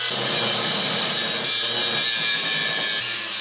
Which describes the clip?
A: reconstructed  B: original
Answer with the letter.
B